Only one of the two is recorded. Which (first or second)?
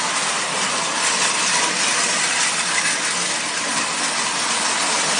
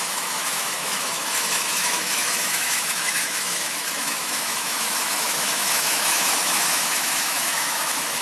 first